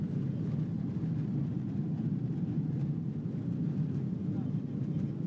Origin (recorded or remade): recorded